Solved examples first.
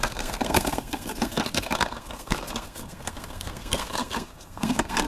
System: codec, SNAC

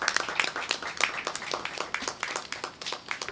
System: none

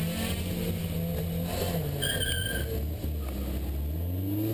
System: none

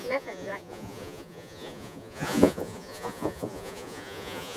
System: vocoder, Vocos